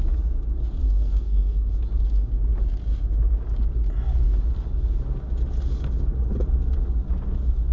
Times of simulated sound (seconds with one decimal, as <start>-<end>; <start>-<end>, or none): 0.8-1.7